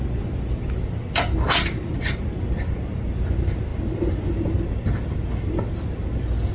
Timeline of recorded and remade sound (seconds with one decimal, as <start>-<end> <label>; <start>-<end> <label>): 0.0-6.5 recorded